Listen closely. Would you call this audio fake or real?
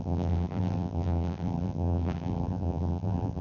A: fake